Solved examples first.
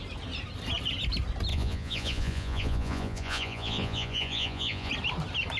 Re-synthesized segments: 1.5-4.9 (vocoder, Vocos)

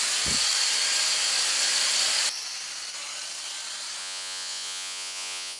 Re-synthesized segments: 4.0-5.6 (vocoder, Vocos)

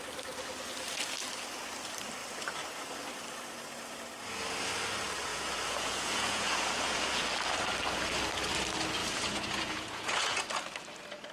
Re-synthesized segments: 5.3-7.2 (vocoder, Vocos); 9.0-10.4

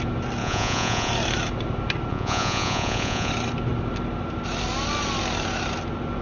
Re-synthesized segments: 0.4-1.1 (vocoder, Vocos); 2.1-3.3

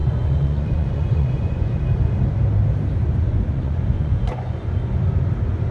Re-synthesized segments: 0.0-1.8 (vocoder, Vocos); 3.0-5.0